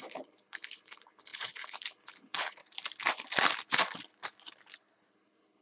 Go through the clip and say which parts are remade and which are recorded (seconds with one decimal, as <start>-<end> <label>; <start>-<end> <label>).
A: 0.0-2.6 remade; 2.6-5.1 recorded; 5.1-5.6 remade